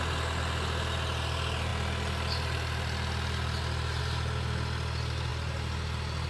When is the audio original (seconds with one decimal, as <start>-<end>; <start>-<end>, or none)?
0.0-6.3